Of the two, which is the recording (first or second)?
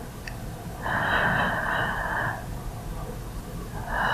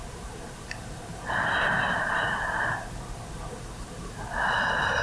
first